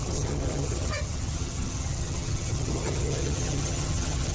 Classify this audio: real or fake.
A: fake